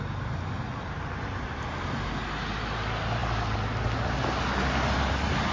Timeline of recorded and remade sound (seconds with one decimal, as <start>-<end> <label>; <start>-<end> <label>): 0.0-5.5 recorded